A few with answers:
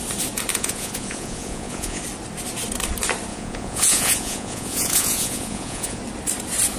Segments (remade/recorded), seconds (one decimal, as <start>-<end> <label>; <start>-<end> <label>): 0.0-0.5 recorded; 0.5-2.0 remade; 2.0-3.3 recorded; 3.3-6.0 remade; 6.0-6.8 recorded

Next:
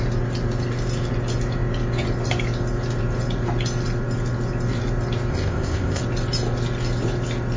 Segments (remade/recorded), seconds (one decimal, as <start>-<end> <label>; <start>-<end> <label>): 0.0-5.3 recorded; 5.3-6.0 remade; 6.0-7.6 recorded

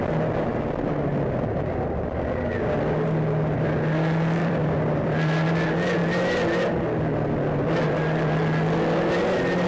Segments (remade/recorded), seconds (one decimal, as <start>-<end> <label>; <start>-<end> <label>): 0.0-4.4 recorded; 4.4-5.5 remade; 5.5-9.7 recorded

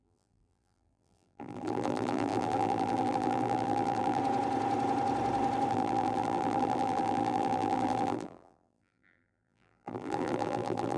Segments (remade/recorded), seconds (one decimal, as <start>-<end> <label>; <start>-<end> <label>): 0.0-4.2 remade; 4.2-5.7 recorded; 5.7-11.0 remade

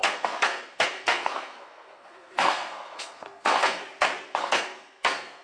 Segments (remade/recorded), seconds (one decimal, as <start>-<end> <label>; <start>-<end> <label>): 0.0-3.8 remade; 3.8-4.4 recorded; 4.4-5.4 remade

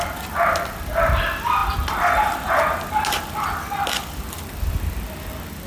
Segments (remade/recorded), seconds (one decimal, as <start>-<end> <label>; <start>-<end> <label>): 0.0-5.7 recorded

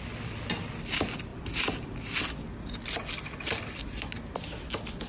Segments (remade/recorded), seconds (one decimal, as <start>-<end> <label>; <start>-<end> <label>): 0.0-5.1 recorded